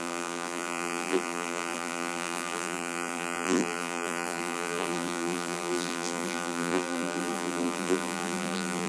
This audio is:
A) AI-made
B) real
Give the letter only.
A